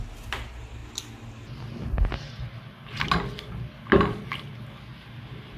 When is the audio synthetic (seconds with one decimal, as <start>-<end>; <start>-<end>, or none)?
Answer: none